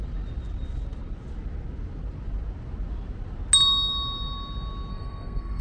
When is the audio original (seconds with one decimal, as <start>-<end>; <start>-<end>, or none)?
0.0-4.9